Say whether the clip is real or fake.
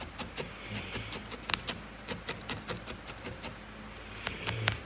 real